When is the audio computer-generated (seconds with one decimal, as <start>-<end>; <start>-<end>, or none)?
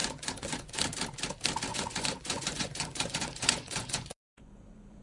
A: 0.0-0.8; 1.7-5.0